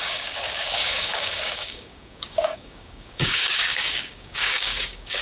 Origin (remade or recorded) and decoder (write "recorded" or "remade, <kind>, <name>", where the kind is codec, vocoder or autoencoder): remade, codec, DAC